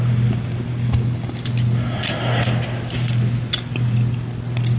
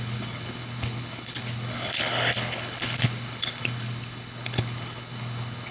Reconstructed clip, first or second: second